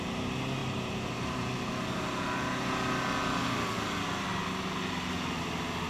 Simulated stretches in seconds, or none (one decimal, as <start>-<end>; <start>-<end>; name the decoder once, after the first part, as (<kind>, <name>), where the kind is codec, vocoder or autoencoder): 0.6-1.7 (vocoder, BigVGAN v2)